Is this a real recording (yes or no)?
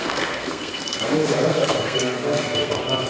no